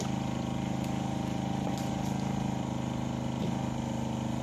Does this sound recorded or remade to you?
recorded